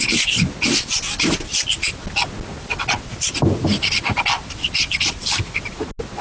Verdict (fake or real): real